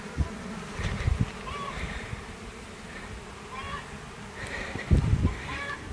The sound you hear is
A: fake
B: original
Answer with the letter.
B